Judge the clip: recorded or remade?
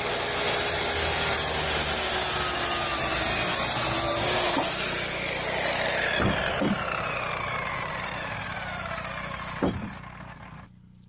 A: recorded